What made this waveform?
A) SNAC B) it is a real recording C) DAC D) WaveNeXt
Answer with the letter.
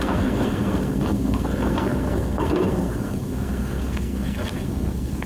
A